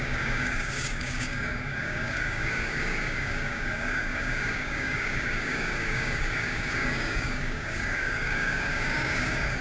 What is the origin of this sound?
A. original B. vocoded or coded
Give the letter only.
B